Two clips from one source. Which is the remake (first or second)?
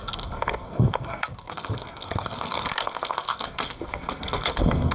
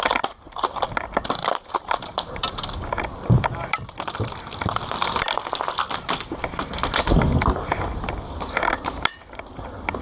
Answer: first